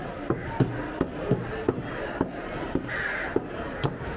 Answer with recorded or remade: recorded